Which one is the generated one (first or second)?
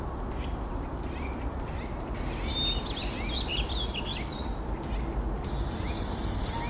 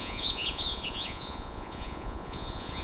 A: second